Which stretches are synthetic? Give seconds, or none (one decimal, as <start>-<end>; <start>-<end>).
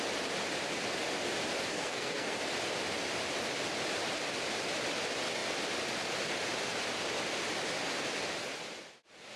1.7-2.4